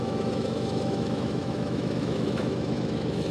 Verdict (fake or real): fake